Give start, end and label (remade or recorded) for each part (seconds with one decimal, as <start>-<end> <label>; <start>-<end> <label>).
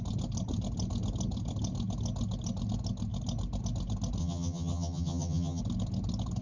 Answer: 0.0-4.2 recorded; 4.2-5.6 remade; 5.6-6.4 recorded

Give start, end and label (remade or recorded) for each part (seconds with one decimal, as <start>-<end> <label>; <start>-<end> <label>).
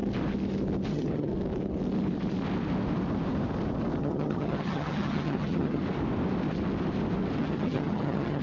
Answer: 0.0-0.9 recorded; 0.9-1.3 remade; 1.3-4.0 recorded; 4.0-5.8 remade; 5.8-7.4 recorded; 7.4-8.4 remade